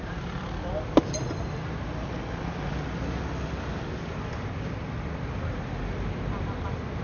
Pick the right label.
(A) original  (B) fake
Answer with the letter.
A